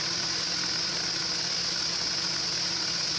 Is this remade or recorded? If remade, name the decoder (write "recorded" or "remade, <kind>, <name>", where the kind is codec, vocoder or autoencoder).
recorded